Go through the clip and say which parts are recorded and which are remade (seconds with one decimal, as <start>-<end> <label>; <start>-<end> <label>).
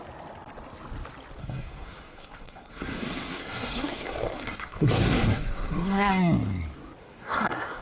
0.0-1.4 recorded; 1.4-6.1 remade; 6.1-7.0 recorded; 7.0-7.8 remade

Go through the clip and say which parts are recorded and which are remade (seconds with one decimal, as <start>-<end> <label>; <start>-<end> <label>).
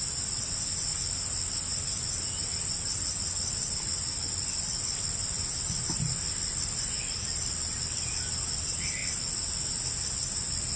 0.0-10.8 recorded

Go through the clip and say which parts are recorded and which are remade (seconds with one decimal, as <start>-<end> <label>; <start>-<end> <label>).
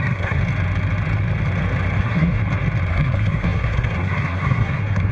0.0-0.4 remade; 0.4-2.0 recorded; 2.0-2.4 remade; 2.4-2.9 recorded; 2.9-5.1 remade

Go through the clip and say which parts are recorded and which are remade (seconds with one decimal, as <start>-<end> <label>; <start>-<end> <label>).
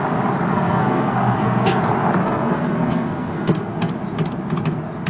0.0-0.5 recorded; 0.5-1.8 remade; 1.8-2.2 recorded; 2.2-3.9 remade; 3.9-5.1 recorded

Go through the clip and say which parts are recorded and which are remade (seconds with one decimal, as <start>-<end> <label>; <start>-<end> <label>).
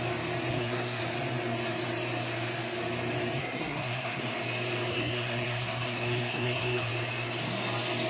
0.0-0.5 recorded; 0.5-1.0 remade; 1.0-3.4 recorded; 3.4-4.2 remade; 4.2-4.9 recorded; 4.9-6.9 remade; 6.9-8.1 recorded